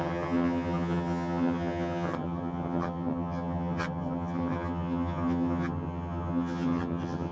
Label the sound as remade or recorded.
remade